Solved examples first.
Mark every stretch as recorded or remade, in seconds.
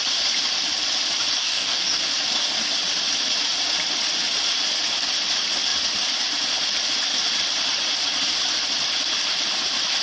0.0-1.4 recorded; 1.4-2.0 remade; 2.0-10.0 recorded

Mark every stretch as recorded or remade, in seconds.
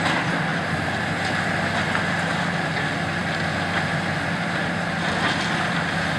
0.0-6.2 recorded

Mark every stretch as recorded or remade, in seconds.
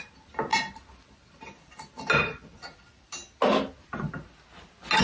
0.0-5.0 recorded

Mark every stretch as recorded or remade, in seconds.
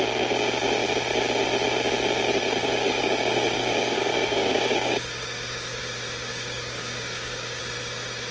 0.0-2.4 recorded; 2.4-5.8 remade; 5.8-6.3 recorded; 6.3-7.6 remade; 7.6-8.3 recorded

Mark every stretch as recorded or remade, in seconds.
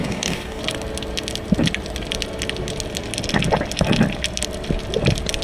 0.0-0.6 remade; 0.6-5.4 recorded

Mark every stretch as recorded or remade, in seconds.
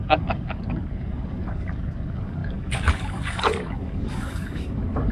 0.0-5.1 remade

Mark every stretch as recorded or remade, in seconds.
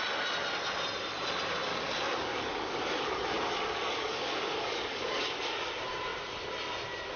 0.0-1.7 recorded; 1.7-5.2 remade; 5.2-7.2 recorded